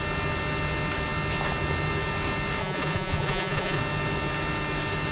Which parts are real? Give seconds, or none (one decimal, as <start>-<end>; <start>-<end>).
0.0-2.6; 3.8-5.1